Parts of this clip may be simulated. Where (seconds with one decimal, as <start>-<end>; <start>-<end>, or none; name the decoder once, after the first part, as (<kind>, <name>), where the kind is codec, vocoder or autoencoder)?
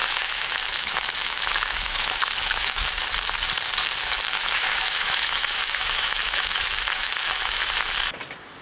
0.0-2.9 (autoencoder, DAC-VAE); 4.0-7.6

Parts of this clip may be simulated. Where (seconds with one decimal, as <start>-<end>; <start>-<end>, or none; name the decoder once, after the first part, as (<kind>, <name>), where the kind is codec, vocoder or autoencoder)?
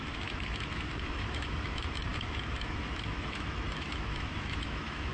0.0-5.1 (autoencoder, DAC-VAE)